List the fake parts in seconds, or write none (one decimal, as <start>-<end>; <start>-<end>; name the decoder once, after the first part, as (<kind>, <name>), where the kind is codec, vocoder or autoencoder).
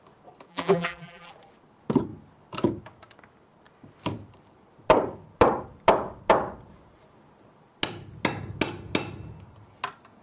0.5-1.3 (vocoder, BigVGAN v2)